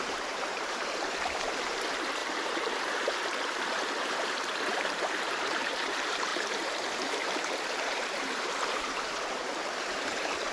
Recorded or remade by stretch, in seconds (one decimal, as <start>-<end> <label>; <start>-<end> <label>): 0.0-10.5 remade